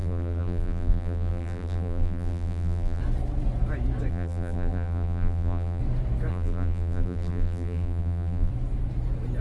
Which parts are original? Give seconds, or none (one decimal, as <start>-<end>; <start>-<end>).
3.0-4.1; 5.8-6.3; 8.5-9.4

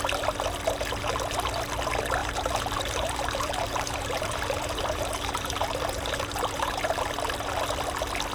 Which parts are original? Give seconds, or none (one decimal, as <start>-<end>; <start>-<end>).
0.0-2.2; 7.1-8.3

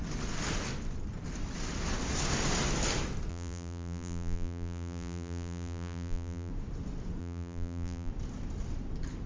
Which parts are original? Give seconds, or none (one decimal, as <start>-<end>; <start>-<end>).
0.0-3.3; 6.5-7.2; 8.1-9.3

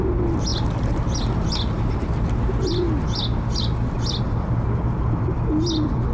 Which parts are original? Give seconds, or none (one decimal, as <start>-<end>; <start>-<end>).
0.5-4.2